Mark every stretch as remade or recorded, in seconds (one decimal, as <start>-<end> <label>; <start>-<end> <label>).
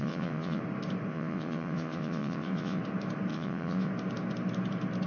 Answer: 0.0-0.6 remade; 0.6-1.1 recorded; 1.1-2.8 remade; 2.8-3.3 recorded; 3.3-3.9 remade; 3.9-5.1 recorded